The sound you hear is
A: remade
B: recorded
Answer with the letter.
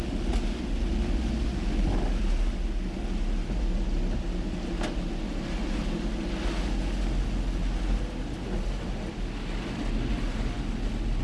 B